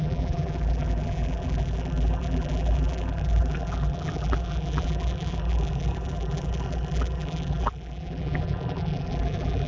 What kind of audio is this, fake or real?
fake